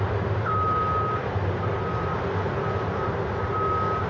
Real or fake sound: real